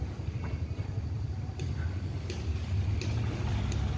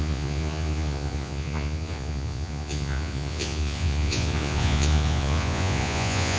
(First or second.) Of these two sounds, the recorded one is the first